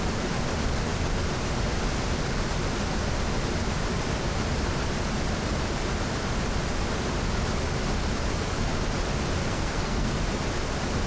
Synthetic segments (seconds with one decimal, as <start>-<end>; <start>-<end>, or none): 9.4-10.2